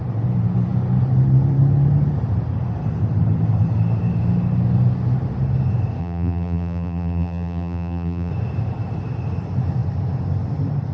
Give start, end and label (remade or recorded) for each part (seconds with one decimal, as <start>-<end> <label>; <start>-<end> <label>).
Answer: 0.0-6.0 recorded; 6.0-8.3 remade; 8.3-10.9 recorded